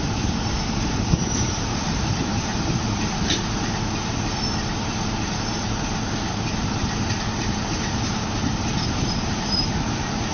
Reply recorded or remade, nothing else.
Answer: remade